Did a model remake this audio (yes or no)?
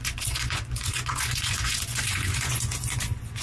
yes